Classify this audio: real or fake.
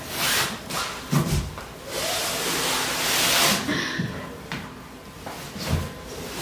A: real